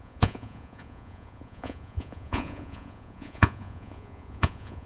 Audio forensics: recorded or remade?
remade